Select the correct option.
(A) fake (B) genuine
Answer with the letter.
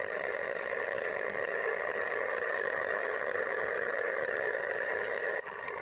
A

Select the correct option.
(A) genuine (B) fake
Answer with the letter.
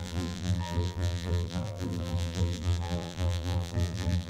B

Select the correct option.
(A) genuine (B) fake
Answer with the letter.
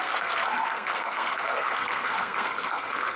B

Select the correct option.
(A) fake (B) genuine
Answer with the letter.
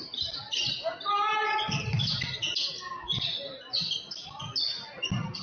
B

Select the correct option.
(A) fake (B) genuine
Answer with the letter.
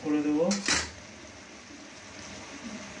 B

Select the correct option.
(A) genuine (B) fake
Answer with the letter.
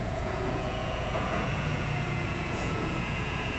B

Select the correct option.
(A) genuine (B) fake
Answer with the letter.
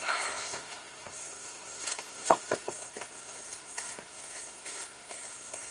B